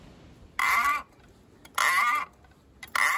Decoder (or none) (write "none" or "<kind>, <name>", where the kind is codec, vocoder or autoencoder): none